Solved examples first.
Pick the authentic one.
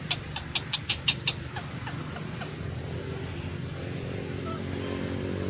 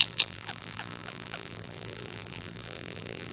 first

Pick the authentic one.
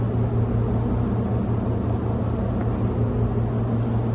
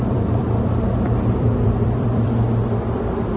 first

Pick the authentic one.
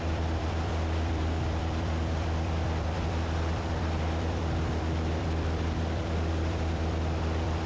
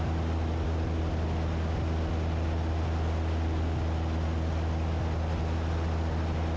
second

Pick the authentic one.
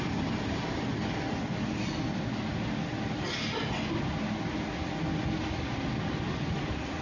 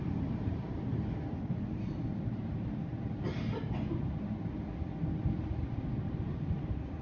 first